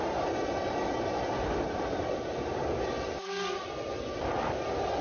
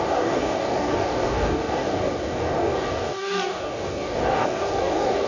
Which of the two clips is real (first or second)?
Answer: first